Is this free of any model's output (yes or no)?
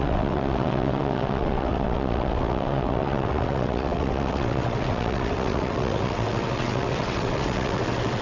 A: no